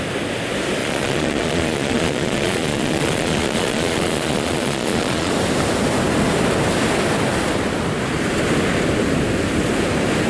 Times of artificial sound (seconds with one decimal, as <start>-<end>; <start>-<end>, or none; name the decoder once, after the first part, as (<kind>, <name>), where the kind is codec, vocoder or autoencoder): 0.8-5.3 (vocoder, Vocos)